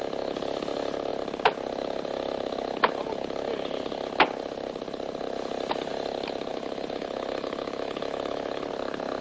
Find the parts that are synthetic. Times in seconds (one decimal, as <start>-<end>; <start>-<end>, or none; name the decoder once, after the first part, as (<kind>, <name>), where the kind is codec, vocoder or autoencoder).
6.5-8.7 (autoencoder, DAC-VAE)

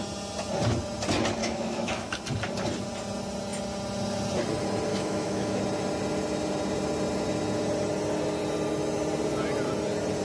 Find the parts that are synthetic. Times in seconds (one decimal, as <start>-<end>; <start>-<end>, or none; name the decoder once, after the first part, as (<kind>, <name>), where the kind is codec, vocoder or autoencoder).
1.4-2.1 (autoencoder, DAC-VAE); 4.9-5.6

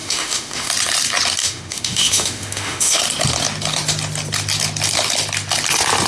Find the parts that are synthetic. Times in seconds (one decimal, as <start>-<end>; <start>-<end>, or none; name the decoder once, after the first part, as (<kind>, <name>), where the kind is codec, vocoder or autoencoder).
0.0-0.7 (autoencoder, DAC-VAE); 1.4-3.0

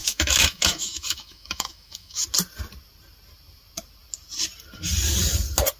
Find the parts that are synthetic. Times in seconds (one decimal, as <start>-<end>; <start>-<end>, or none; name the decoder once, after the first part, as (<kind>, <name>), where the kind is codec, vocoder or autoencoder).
0.0-2.2 (autoencoder, DAC-VAE)

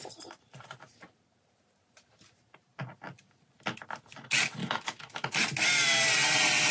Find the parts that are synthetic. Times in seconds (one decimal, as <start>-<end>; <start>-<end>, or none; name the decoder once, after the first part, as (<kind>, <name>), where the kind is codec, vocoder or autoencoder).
4.6-5.3 (autoencoder, DAC-VAE)